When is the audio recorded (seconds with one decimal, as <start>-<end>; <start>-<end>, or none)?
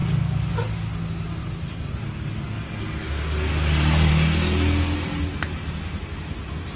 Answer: 0.0-6.8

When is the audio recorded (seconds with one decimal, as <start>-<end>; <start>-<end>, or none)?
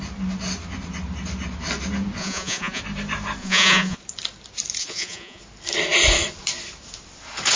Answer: 0.0-2.2; 2.8-3.4; 4.0-4.8; 5.4-7.6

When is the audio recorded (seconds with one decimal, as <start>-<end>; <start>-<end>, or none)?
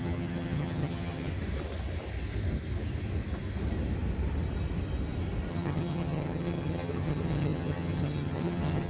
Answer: 1.3-5.5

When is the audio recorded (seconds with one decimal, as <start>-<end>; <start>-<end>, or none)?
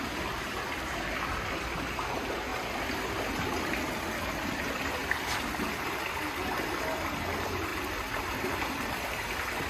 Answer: 0.0-9.7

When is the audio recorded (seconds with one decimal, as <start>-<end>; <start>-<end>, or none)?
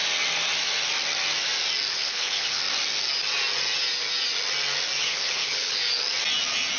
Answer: 0.0-1.9; 2.6-5.0; 5.8-6.8